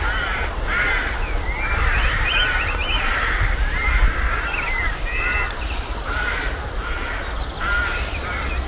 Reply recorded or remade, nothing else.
recorded